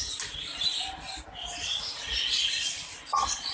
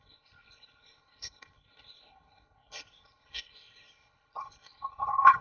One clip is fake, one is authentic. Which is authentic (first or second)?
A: first